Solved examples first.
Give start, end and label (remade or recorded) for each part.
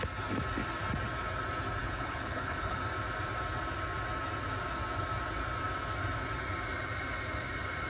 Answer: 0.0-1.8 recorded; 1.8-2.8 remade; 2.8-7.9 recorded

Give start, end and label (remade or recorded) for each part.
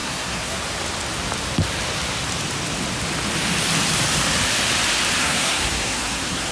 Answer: 0.0-0.6 remade; 0.6-5.2 recorded; 5.2-6.5 remade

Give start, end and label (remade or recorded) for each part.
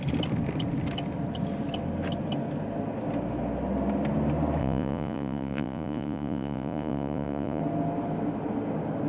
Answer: 0.0-4.6 recorded; 4.6-7.6 remade; 7.6-9.1 recorded